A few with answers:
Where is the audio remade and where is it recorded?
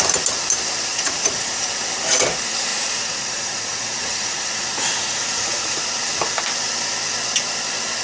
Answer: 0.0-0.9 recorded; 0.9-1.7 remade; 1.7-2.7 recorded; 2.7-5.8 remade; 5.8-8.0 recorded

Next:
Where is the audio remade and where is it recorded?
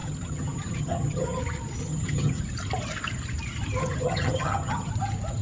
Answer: 0.0-1.4 remade; 1.4-1.8 recorded; 1.8-2.4 remade; 2.4-3.8 recorded; 3.8-4.9 remade; 4.9-5.4 recorded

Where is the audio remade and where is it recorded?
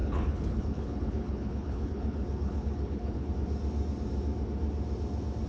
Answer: 0.0-3.3 remade; 3.3-5.5 recorded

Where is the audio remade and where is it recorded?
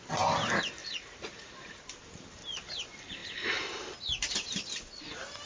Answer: 0.0-0.8 recorded; 0.8-1.8 remade; 1.8-5.5 recorded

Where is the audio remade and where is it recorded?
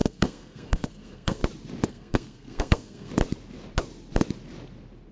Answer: 0.0-1.4 remade; 1.4-1.9 recorded; 1.9-3.1 remade; 3.1-5.1 recorded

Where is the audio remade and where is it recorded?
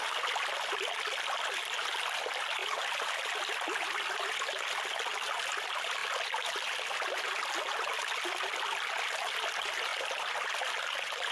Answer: 0.0-11.3 recorded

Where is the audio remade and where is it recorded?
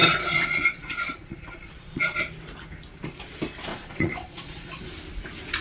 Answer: 0.0-2.2 remade; 2.2-3.7 recorded; 3.7-4.8 remade; 4.8-5.6 recorded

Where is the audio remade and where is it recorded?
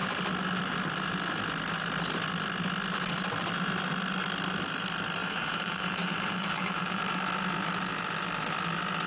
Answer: 0.0-5.2 recorded; 5.2-7.0 remade; 7.0-9.1 recorded